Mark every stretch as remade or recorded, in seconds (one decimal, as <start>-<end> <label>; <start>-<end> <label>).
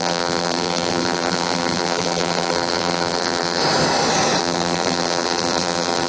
0.0-3.6 remade; 3.6-4.4 recorded; 4.4-6.1 remade